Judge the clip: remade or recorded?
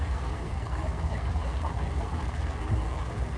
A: remade